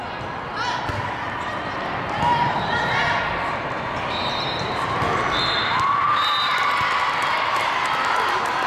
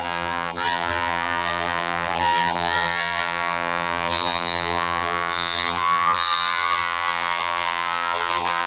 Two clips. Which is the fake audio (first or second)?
second